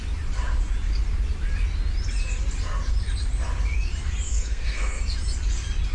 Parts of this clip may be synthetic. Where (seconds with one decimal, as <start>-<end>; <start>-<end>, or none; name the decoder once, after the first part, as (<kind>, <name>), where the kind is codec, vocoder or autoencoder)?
4.3-5.0 (codec, SNAC)

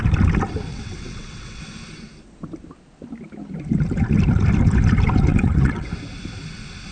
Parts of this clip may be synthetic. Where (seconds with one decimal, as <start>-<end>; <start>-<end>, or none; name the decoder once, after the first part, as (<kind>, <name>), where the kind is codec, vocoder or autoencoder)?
0.7-1.6 (vocoder, WaveNeXt); 5.3-5.9

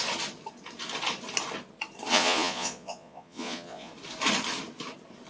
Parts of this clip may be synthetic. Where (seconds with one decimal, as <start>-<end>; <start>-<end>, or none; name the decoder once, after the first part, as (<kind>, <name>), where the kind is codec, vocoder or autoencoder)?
2.1-3.9 (vocoder, Vocos)

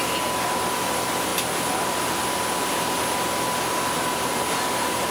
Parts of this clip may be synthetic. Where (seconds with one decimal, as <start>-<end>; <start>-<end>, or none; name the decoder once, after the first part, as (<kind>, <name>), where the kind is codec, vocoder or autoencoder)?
none

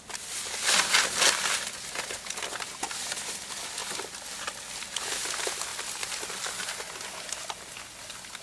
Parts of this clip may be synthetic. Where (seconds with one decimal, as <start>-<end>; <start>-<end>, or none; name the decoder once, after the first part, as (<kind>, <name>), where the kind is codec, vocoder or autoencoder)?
none

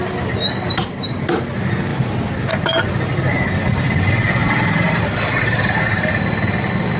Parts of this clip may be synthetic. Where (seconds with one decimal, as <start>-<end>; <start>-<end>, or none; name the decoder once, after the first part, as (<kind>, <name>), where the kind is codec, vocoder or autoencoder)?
4.4-5.8 (vocoder, BigVGAN v2)

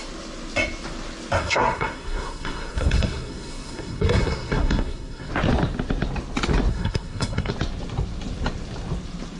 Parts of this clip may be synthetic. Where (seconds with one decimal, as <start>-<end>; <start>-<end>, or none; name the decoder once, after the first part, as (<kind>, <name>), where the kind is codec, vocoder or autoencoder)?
1.4-5.3 (codec, SNAC); 6.7-7.5